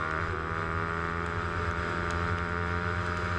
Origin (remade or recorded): recorded